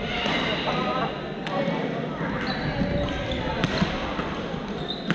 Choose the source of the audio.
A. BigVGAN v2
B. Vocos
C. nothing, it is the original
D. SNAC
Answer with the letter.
C